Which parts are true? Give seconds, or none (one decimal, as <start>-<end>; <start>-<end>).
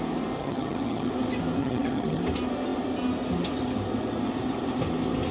0.0-0.4; 1.1-1.6; 2.2-5.3